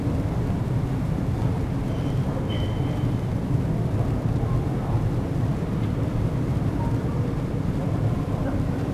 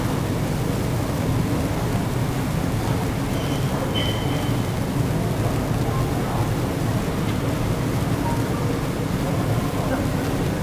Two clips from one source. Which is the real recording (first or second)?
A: second